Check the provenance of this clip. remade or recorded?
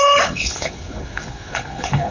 remade